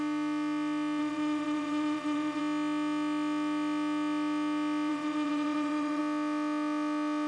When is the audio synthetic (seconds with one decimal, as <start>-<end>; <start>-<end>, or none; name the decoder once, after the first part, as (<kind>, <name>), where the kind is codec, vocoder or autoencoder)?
1.0-2.4 (vocoder, WaveNeXt); 4.9-6.0

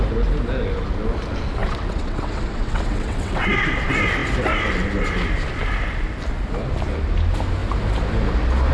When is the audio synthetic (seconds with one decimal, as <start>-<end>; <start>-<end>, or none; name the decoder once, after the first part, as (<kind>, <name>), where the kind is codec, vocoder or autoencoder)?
1.6-3.5 (vocoder, WaveNeXt)

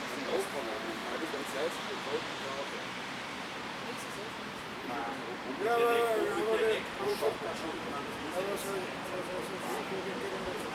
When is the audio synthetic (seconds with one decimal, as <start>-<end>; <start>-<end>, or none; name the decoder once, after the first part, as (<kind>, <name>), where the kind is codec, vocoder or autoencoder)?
0.0-1.0 (vocoder, BigVGAN v2); 1.6-10.7

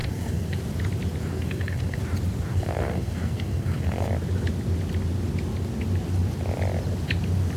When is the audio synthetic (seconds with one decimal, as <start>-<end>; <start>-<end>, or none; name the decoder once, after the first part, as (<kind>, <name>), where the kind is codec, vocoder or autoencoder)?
0.0-0.6 (codec, SNAC); 1.3-2.0; 2.5-4.1